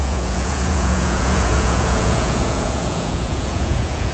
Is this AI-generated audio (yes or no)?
yes